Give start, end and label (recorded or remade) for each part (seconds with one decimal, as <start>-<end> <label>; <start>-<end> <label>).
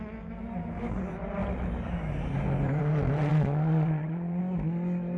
0.0-3.3 recorded; 3.3-4.4 remade; 4.4-5.2 recorded